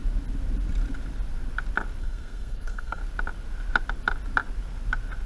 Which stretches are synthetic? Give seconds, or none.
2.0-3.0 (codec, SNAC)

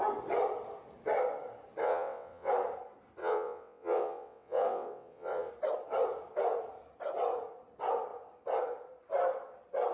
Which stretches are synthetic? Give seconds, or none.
1.8-2.5 (vocoder, WaveNeXt); 3.2-5.5